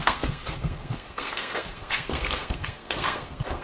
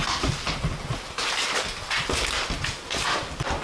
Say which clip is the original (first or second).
second